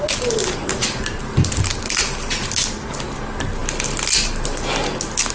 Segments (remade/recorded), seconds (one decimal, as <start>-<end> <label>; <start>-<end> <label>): 0.0-5.3 recorded